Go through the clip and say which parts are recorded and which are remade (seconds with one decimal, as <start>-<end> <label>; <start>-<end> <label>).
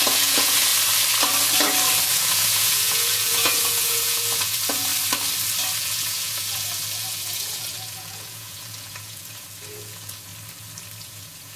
0.0-0.7 remade; 0.7-2.1 recorded; 2.1-4.9 remade; 4.9-5.8 recorded; 5.8-10.3 remade; 10.3-11.0 recorded; 11.0-11.6 remade